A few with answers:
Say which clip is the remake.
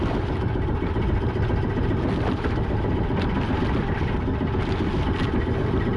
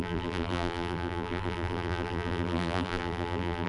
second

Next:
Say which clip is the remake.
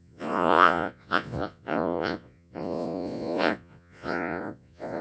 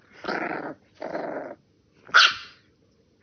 first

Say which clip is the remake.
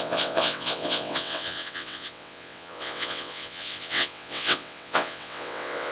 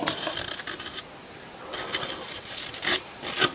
first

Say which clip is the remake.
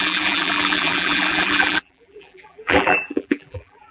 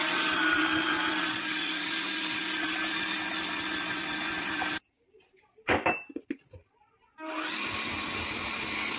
first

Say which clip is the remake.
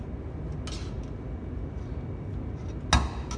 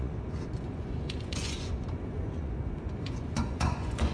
second